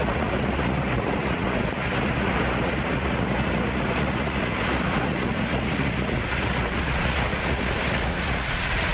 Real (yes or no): no